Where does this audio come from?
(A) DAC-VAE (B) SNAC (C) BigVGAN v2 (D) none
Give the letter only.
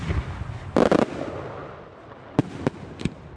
D